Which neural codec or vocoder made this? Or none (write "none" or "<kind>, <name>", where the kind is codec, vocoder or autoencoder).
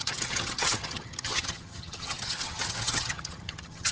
vocoder, HiFi-GAN